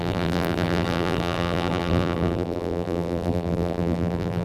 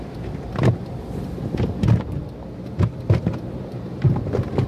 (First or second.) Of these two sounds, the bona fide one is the second